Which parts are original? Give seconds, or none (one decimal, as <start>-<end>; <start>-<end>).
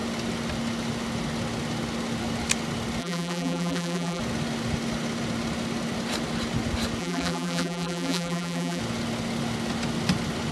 0.0-3.0; 4.2-7.0; 8.8-10.5